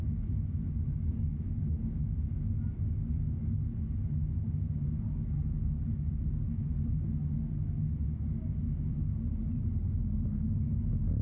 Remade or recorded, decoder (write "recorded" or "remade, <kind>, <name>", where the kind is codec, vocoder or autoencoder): recorded